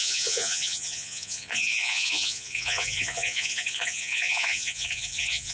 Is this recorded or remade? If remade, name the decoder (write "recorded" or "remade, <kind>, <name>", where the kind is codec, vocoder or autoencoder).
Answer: remade, vocoder, Vocos